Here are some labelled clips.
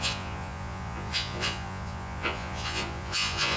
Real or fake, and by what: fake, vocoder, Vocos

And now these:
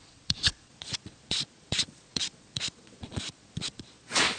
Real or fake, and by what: fake, vocoder, Vocos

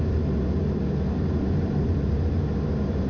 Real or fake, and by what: real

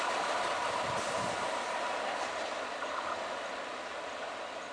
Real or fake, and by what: real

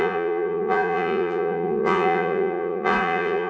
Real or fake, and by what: fake, vocoder, Vocos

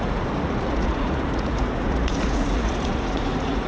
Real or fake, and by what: fake, vocoder, Vocos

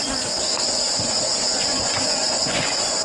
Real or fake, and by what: fake, vocoder, Vocos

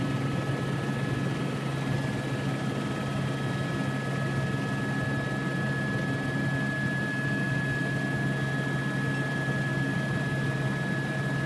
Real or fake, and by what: real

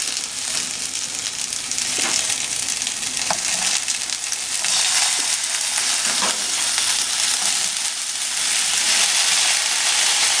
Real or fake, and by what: real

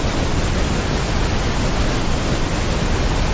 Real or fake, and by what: real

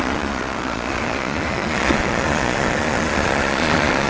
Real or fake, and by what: fake, vocoder, Vocos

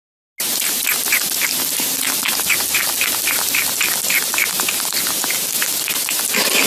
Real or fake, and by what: real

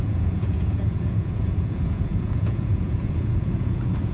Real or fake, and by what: fake, vocoder, Vocos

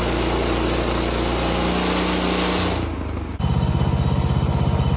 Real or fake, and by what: real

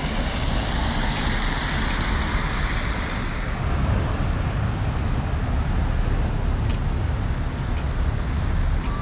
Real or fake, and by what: real